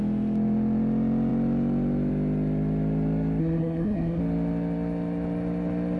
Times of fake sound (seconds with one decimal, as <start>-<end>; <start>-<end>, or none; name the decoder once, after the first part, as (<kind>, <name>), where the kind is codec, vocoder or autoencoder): 3.4-4.2 (codec, SNAC)